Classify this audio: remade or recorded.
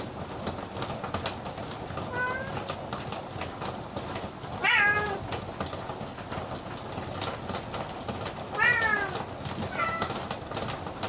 recorded